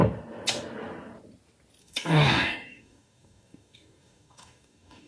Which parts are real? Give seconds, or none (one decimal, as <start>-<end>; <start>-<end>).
0.0-1.8